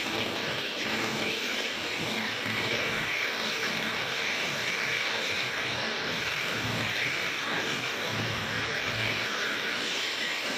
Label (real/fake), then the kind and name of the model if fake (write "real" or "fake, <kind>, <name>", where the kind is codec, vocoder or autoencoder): fake, codec, DAC